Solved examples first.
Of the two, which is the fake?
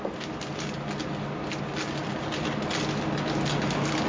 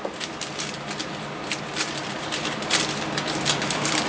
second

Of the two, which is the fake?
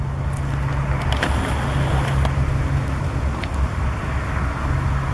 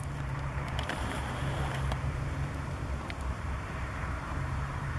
second